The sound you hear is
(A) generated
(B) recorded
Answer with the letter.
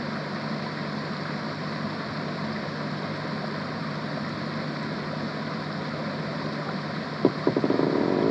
B